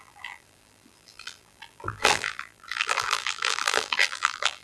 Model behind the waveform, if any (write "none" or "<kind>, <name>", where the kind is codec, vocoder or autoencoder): vocoder, BigVGAN v2